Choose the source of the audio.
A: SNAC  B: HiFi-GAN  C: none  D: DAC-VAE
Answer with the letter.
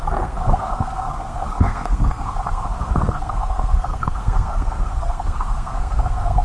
A